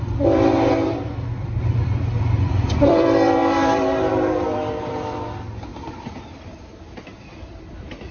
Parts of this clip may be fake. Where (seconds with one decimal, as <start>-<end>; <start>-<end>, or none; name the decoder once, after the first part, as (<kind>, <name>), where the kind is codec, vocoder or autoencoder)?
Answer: 0.0-8.1 (vocoder, BigVGAN v2)